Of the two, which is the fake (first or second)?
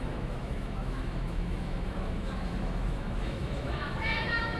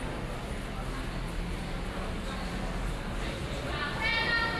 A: first